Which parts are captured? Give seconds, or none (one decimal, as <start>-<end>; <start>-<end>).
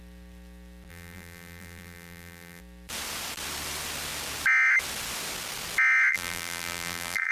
0.0-0.9; 2.6-6.1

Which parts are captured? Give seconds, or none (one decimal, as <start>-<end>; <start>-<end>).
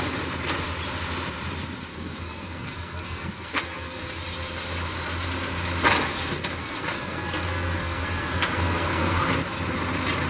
0.0-1.9; 4.0-6.6; 9.2-10.3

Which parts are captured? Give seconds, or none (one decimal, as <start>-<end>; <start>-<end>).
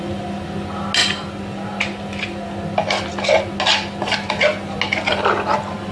0.0-5.9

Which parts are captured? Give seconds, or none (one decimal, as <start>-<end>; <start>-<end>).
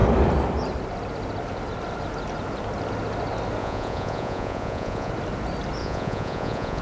0.0-3.6; 5.1-5.8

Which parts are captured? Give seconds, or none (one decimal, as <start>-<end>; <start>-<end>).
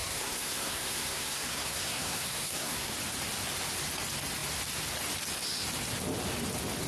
2.9-6.9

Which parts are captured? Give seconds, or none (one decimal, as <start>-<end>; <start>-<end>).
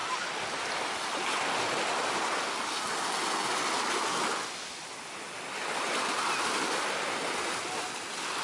0.0-8.4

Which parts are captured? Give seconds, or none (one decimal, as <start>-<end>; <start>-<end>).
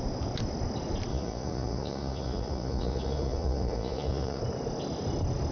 0.0-1.1; 4.4-5.5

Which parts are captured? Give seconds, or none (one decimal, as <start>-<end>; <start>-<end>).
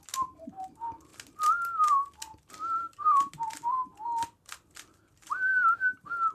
0.0-6.3